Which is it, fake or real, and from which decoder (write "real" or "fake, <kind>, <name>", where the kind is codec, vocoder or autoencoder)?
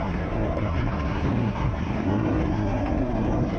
fake, codec, SNAC